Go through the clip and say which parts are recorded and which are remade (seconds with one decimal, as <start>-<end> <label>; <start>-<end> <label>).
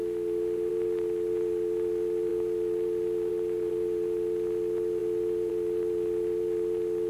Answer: 0.0-7.1 recorded